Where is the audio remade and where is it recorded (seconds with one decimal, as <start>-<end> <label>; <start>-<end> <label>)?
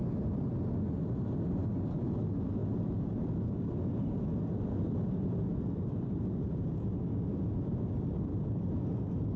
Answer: 0.0-9.4 recorded